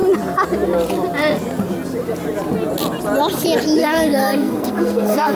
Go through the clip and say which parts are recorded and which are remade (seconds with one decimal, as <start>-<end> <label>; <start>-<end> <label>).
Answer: 0.0-3.8 recorded; 3.8-5.4 remade